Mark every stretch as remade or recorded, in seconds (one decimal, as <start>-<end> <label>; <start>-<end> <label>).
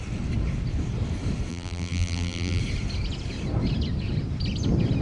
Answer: 0.0-1.5 recorded; 1.5-2.6 remade; 2.6-5.0 recorded